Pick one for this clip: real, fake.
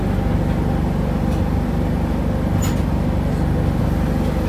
real